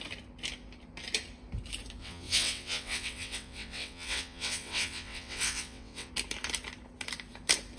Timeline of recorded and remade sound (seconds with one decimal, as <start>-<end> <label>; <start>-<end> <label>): 0.0-2.0 recorded; 2.0-6.1 remade; 6.1-7.8 recorded